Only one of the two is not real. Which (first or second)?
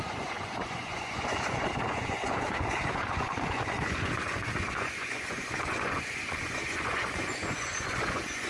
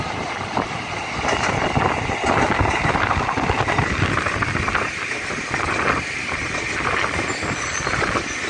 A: first